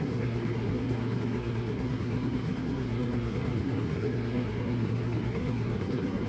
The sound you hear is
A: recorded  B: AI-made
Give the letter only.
B